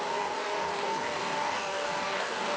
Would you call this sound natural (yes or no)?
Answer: no